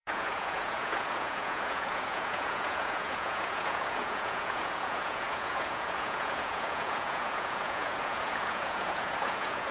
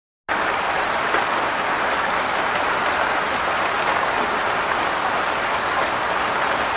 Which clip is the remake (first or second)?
first